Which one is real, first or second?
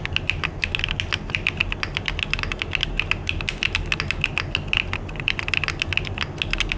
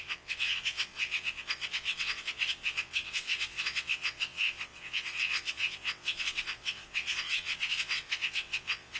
first